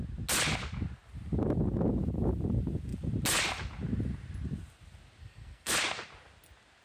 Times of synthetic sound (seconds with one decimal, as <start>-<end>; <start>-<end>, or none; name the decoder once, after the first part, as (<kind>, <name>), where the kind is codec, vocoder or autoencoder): 5.2-5.7 (codec, SNAC)